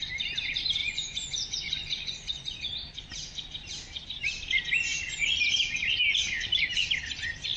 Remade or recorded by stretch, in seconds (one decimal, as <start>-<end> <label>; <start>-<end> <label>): 0.0-0.8 recorded; 0.8-2.7 remade; 2.7-7.6 recorded

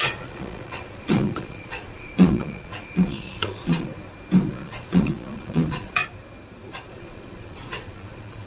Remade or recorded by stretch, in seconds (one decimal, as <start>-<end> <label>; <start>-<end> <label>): 0.0-3.9 remade; 3.9-4.5 recorded; 4.5-6.0 remade; 6.0-6.9 recorded; 6.9-8.5 remade

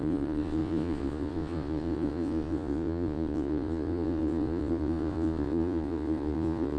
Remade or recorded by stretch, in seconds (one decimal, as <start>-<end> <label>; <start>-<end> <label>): 0.0-6.8 remade

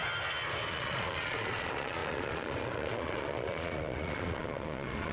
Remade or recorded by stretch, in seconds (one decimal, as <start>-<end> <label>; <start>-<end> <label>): 0.0-0.7 recorded; 0.7-5.1 remade

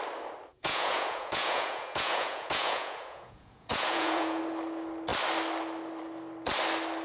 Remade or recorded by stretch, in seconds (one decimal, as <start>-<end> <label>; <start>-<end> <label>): 0.0-0.5 recorded; 0.5-4.4 remade; 4.4-7.0 recorded

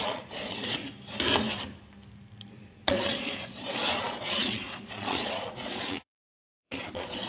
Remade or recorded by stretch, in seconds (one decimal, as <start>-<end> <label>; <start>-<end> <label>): 0.0-0.8 remade; 0.8-2.5 recorded; 2.5-7.3 remade

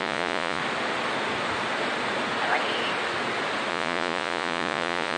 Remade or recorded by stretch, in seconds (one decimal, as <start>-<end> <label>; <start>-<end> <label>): 0.0-0.6 remade; 0.6-3.7 recorded; 3.7-5.2 remade